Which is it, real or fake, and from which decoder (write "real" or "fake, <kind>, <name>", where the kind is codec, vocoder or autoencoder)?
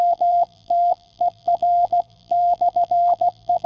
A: fake, vocoder, BigVGAN v2